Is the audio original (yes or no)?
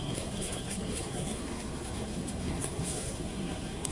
no